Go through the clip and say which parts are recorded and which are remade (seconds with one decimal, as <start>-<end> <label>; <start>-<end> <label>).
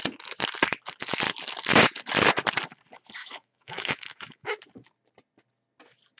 0.0-3.2 recorded; 3.2-4.6 remade; 4.6-6.2 recorded